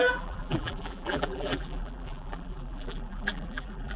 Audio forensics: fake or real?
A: fake